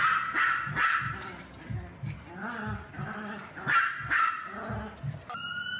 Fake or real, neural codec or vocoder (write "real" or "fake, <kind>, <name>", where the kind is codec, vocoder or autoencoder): real